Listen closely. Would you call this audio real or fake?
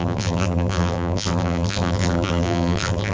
fake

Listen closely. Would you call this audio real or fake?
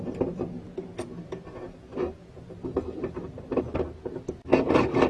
real